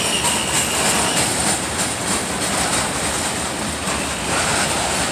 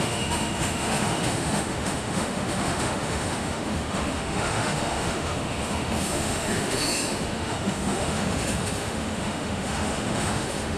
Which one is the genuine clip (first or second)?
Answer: first